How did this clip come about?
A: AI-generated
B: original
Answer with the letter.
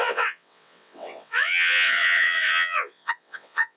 A